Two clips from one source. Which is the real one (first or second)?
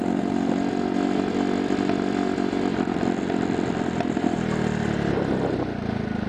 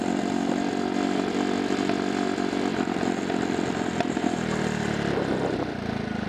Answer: first